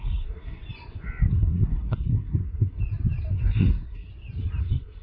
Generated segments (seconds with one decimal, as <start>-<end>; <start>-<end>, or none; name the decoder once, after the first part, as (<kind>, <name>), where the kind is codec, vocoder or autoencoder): 0.0-0.6 (codec, SNAC); 1.3-2.8; 3.3-4.1; 4.6-5.0